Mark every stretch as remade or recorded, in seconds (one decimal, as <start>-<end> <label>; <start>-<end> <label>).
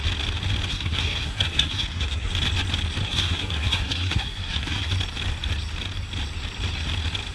0.0-0.7 recorded; 0.7-2.3 remade; 2.3-3.0 recorded; 3.0-4.9 remade; 4.9-7.3 recorded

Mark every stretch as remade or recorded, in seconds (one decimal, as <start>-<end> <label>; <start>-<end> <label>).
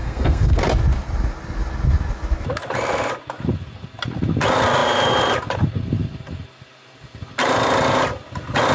0.0-0.6 remade; 0.6-8.7 recorded